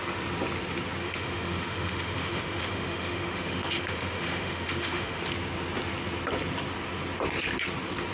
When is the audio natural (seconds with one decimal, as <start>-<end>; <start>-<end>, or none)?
0.0-1.0; 5.2-8.1